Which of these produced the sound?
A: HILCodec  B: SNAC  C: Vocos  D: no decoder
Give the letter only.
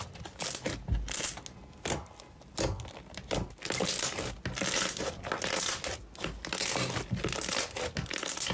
D